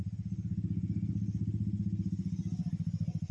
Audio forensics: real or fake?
real